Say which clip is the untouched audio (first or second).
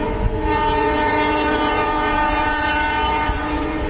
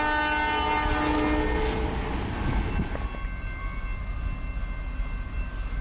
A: second